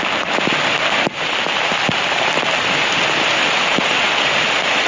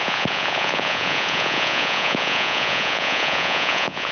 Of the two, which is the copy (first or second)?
second